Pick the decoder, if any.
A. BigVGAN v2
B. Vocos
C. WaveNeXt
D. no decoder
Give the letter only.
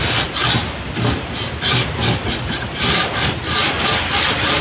D